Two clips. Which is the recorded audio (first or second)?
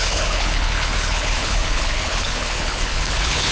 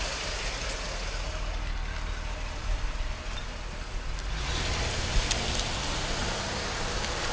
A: second